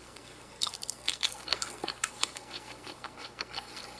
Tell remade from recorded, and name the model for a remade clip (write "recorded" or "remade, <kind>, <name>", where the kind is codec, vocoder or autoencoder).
remade, codec, SNAC